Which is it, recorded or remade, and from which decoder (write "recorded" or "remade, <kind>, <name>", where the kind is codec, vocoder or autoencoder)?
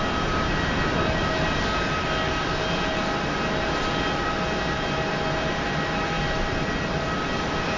recorded